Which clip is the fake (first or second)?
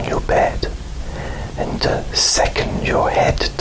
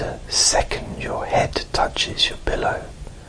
second